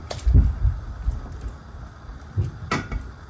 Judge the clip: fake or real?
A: real